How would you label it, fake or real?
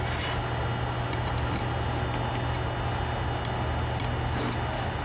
real